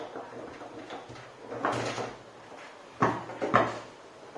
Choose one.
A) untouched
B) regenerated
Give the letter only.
A